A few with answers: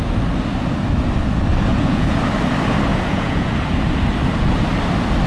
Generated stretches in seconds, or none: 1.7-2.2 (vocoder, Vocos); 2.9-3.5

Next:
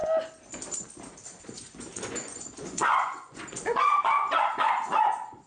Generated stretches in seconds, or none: 1.4-5.5 (vocoder, Vocos)

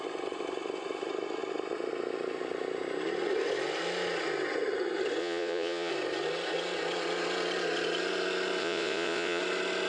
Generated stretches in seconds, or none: 5.2-5.9 (vocoder, Vocos); 8.6-9.4